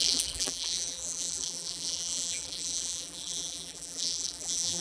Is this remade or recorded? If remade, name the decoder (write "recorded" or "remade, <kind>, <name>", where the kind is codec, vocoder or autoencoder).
remade, vocoder, BigVGAN v2